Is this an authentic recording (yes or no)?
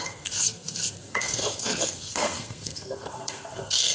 no